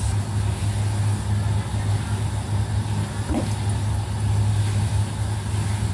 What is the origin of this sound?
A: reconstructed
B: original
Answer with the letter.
B